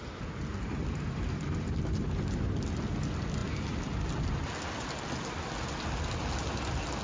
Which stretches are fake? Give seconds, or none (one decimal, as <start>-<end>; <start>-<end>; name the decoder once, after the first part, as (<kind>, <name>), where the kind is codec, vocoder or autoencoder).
none